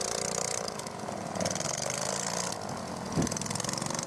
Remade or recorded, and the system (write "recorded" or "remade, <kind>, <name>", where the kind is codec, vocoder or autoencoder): recorded